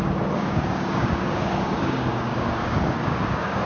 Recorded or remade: remade